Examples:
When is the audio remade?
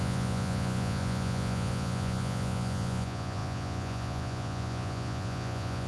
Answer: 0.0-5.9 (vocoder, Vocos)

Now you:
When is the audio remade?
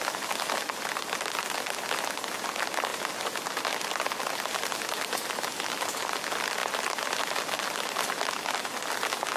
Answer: none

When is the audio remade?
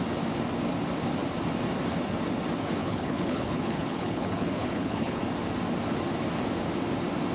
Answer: 2.8-5.2 (codec, HILCodec)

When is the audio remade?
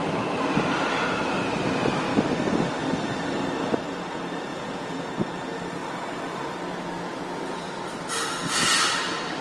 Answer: 4.5-5.1 (vocoder, Vocos)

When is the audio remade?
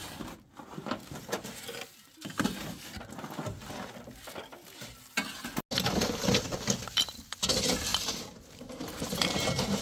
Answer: 7.9-9.8 (vocoder, BigVGAN v2)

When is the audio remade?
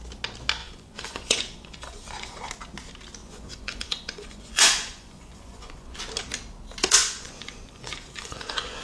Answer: 0.6-2.5 (vocoder, Vocos); 3.2-6.0; 7.0-8.8